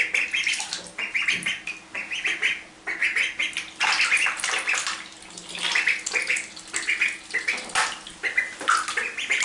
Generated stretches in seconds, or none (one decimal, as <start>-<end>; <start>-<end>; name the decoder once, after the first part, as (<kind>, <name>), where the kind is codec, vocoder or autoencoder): none